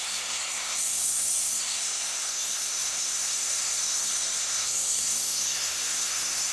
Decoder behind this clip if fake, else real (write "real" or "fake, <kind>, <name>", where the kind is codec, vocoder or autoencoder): fake, codec, SNAC